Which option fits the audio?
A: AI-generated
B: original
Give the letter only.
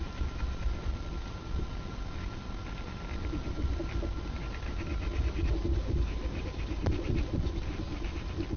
B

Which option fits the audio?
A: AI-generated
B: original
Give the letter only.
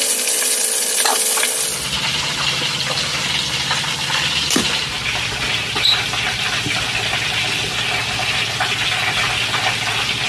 B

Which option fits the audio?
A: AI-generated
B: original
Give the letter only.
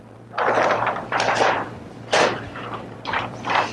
A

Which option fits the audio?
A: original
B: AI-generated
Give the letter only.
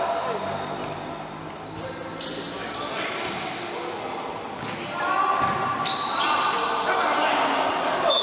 A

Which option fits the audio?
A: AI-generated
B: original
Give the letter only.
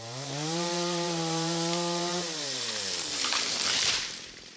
A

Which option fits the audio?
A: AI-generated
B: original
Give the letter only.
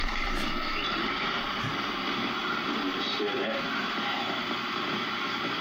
A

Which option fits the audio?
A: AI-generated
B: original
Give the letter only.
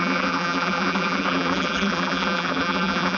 A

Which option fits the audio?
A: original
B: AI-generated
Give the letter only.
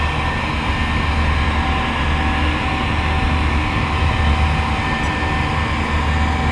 A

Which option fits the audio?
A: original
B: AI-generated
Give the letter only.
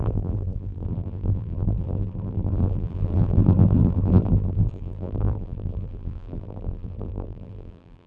B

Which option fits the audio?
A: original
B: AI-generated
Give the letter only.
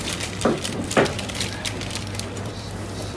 B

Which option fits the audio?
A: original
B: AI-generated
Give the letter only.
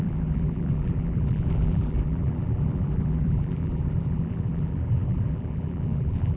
B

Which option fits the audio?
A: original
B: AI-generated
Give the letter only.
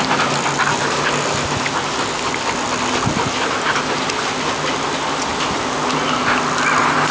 A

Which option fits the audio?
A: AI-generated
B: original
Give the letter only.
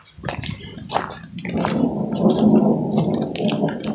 B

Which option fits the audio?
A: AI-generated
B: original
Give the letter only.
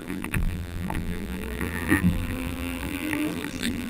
A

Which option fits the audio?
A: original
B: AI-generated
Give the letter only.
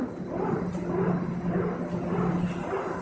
A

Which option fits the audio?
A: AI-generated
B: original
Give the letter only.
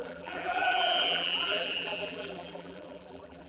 A